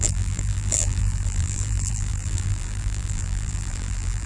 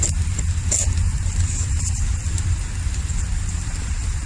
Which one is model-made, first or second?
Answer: first